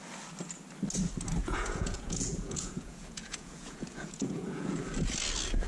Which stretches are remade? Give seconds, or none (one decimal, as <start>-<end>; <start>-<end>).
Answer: 1.4-4.8